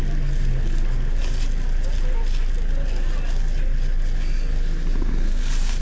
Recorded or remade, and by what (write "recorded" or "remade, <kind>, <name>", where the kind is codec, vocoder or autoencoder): recorded